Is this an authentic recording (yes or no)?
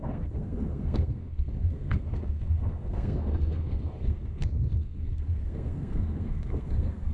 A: no